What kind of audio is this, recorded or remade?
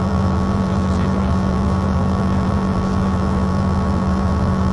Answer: remade